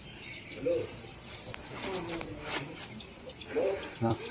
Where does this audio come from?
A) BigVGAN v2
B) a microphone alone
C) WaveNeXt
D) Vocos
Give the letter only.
A